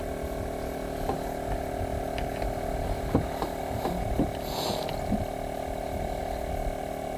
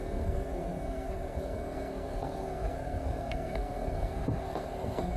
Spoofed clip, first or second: second